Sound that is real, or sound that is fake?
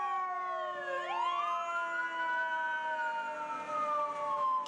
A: real